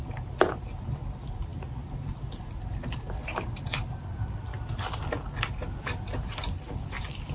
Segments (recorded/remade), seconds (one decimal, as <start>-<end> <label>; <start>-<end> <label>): 0.0-7.3 recorded